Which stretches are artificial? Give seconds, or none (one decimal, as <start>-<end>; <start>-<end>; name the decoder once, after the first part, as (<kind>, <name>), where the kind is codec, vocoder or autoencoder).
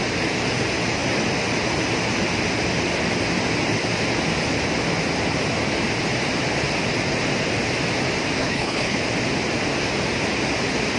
8.4-9.0 (codec, HILCodec)